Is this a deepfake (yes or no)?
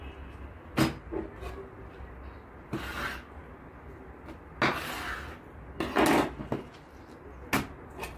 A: no